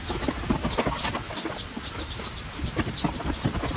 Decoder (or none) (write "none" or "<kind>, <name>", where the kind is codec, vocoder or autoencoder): none